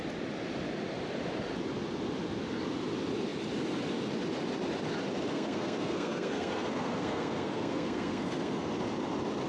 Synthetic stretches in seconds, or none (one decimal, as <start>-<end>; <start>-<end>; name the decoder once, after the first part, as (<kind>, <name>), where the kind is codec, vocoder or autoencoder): 5.3-8.7 (codec, SNAC)